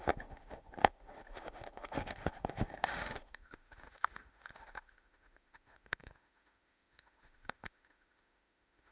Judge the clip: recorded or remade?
remade